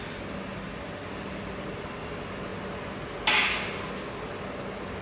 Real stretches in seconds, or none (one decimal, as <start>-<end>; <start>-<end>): 0.0-5.0